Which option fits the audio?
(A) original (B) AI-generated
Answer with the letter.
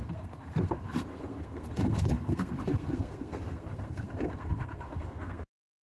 B